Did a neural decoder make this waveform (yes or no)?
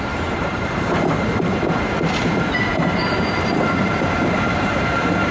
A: yes